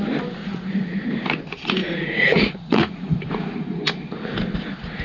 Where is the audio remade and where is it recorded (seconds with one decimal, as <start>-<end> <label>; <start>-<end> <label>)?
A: 0.0-0.4 recorded; 0.4-1.0 remade; 1.0-1.8 recorded; 1.8-3.8 remade; 3.8-5.0 recorded